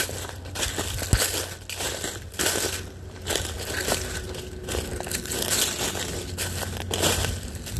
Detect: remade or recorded recorded